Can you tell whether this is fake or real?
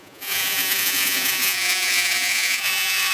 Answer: fake